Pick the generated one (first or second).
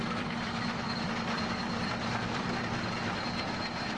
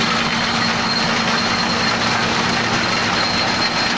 first